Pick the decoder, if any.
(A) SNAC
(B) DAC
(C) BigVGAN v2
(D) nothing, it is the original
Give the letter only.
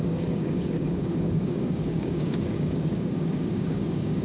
B